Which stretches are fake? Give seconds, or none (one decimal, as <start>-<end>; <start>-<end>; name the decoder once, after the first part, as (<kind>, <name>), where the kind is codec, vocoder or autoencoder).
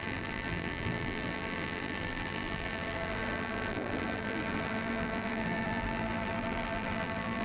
0.0-7.4 (vocoder, BigVGAN v2)